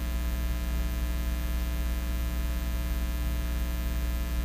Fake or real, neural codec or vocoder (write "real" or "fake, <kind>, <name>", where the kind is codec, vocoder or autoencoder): real